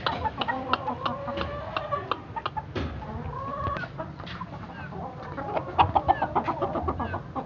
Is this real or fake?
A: real